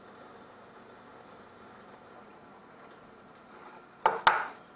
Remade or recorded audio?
recorded